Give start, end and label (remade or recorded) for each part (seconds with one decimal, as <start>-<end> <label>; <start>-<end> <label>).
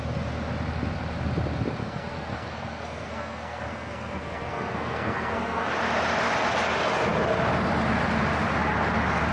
0.0-1.8 recorded; 1.8-5.7 remade; 5.7-9.3 recorded